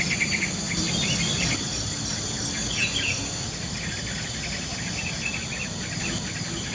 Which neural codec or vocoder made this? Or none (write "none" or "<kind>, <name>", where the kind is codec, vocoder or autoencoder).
none